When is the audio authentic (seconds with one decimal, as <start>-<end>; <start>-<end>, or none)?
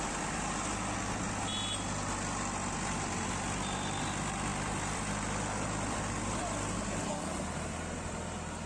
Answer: 0.0-4.5; 6.4-8.7